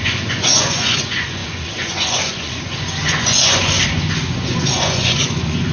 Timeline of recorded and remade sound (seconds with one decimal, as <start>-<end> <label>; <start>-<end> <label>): 0.0-5.7 remade